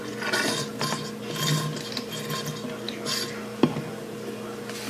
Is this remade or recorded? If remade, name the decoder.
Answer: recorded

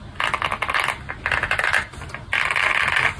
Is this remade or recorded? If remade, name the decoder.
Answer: recorded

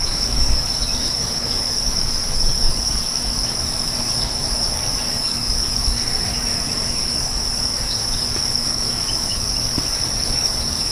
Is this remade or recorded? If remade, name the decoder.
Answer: remade, codec, DAC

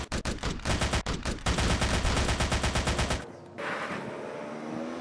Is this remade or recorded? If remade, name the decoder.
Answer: recorded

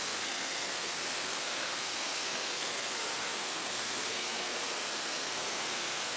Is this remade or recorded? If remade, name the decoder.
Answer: remade, codec, SNAC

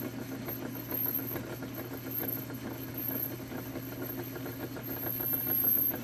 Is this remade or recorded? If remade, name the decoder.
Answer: recorded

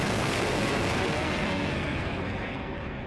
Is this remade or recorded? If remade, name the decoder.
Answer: remade, codec, SNAC